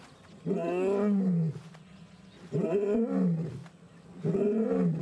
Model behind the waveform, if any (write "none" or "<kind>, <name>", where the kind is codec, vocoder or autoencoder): none